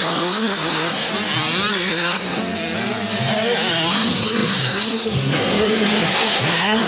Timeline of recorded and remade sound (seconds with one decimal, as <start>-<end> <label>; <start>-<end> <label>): 0.0-1.1 remade; 1.1-1.7 recorded; 1.7-2.4 remade; 2.4-3.9 recorded; 3.9-6.9 remade